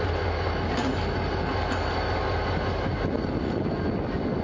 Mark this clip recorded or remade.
recorded